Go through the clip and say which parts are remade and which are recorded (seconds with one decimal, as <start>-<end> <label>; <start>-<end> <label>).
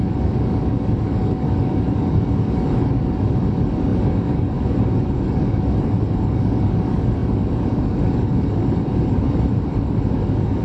0.0-10.6 remade